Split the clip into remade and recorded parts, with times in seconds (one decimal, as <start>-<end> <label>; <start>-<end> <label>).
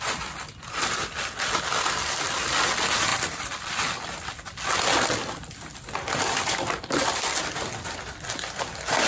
0.0-3.1 recorded; 3.1-3.7 remade; 3.7-5.7 recorded; 5.7-6.5 remade; 6.5-9.1 recorded